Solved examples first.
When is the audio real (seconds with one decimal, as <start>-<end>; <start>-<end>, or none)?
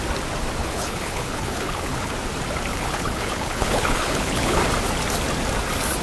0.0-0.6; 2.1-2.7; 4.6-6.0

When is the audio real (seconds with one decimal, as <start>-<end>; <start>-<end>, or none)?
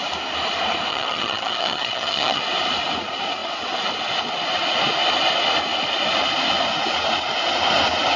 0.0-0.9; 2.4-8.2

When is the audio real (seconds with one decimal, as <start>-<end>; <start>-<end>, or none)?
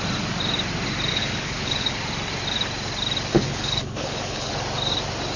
0.0-1.1; 2.0-3.3; 4.5-5.4